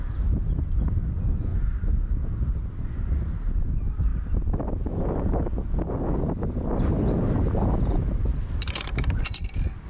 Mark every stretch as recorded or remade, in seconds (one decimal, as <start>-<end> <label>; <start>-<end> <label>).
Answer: 0.0-1.5 recorded; 1.5-2.5 remade; 2.5-4.1 recorded; 4.1-4.7 remade; 4.7-8.3 recorded; 8.3-9.2 remade; 9.2-9.9 recorded